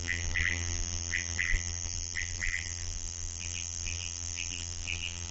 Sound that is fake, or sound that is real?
fake